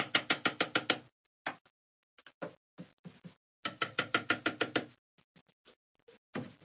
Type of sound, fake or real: real